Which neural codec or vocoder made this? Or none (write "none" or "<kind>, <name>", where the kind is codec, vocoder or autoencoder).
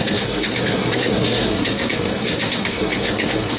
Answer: codec, SNAC